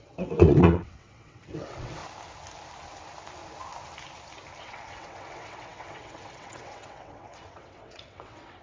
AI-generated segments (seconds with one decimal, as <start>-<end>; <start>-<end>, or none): 0.0-2.0; 4.6-8.6